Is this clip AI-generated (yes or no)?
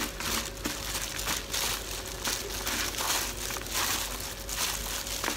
no